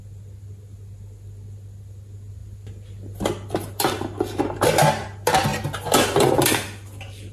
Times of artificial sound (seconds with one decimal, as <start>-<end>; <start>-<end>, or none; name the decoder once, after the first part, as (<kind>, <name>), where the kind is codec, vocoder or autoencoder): none